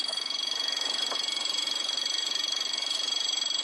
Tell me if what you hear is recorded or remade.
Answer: remade